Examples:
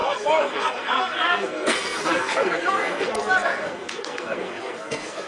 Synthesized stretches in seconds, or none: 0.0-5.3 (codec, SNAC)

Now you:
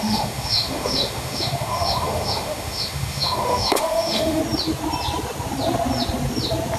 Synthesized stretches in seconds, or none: 0.0-4.4 (autoencoder, DAC-VAE)

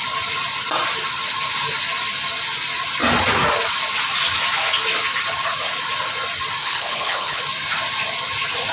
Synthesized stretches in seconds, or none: 6.6-7.4 (codec, HILCodec)

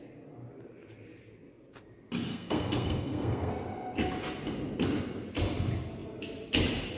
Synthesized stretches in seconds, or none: 2.3-3.5 (codec, SNAC)